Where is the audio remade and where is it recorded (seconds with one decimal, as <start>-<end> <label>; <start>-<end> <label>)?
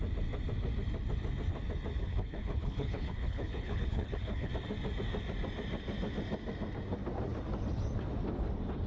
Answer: 0.0-2.0 recorded; 2.0-4.5 remade; 4.5-8.9 recorded